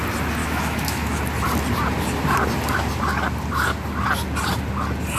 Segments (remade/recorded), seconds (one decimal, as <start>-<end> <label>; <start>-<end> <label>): 0.0-0.4 recorded; 0.4-1.2 remade; 1.2-5.2 recorded